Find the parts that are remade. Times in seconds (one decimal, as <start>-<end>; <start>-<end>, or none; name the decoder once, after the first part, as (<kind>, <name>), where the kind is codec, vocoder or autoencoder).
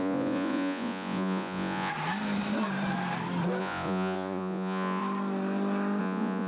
0.0-1.9 (vocoder, Vocos); 3.6-5.0; 6.0-6.5